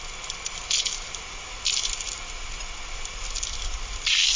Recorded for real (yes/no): yes